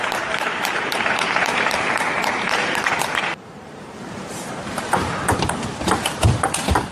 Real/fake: fake